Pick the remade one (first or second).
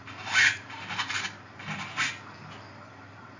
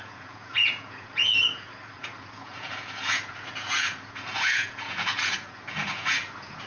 second